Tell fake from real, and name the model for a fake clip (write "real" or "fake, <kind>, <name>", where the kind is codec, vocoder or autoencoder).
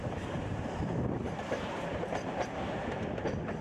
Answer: fake, vocoder, BigVGAN v2